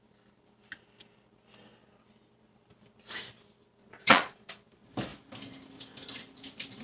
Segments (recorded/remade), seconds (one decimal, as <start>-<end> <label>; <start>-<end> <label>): 0.0-3.8 recorded; 3.8-4.5 remade; 4.5-6.8 recorded

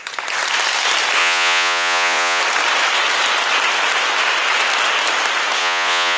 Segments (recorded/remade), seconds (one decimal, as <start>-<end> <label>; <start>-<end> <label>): 0.0-1.2 recorded; 1.2-2.4 remade; 2.4-5.6 recorded; 5.6-6.2 remade

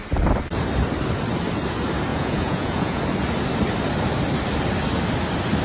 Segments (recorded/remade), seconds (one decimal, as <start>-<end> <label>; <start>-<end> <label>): 0.0-2.1 recorded; 2.1-3.0 remade; 3.0-5.6 recorded

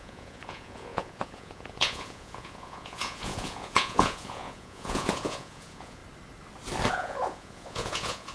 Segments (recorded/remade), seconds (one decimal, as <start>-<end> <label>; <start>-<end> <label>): 0.0-6.0 remade; 6.0-6.9 recorded; 6.9-8.3 remade

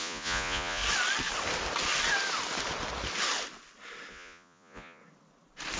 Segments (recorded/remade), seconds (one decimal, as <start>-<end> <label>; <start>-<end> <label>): 0.0-0.8 remade; 0.8-4.1 recorded; 4.1-5.0 remade; 5.0-5.8 recorded

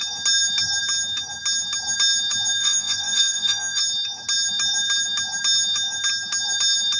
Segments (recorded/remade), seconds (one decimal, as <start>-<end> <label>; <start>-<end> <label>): 0.0-2.6 recorded; 2.6-3.8 remade; 3.8-7.0 recorded